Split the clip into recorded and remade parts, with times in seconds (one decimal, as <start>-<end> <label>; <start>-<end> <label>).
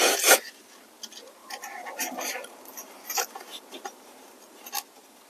0.0-1.4 recorded; 1.4-4.6 remade; 4.6-5.3 recorded